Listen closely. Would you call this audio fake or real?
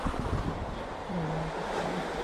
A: real